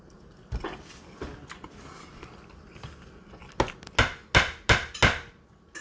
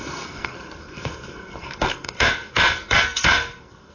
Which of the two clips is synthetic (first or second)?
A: second